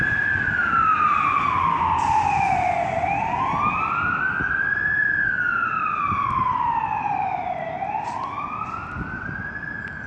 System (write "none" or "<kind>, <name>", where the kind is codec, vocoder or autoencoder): none